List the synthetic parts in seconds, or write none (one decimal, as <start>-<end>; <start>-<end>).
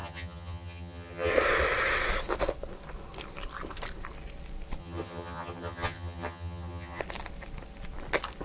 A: 0.0-1.3; 4.8-7.0